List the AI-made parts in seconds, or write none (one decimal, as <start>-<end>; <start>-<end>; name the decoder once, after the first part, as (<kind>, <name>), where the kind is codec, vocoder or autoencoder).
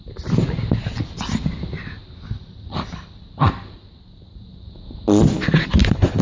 none